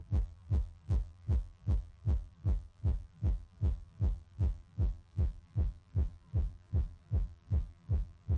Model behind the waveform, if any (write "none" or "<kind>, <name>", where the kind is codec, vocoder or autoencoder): vocoder, BigVGAN v2